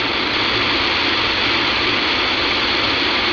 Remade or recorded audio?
recorded